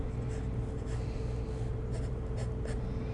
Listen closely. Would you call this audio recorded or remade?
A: recorded